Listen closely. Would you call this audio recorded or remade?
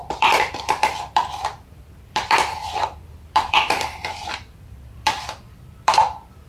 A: remade